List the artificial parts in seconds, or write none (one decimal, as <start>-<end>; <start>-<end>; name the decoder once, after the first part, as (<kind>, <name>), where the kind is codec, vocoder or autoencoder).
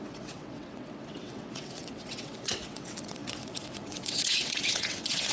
0.0-5.3 (vocoder, WaveNeXt)